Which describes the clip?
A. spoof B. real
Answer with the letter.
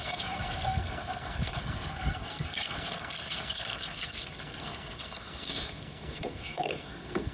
A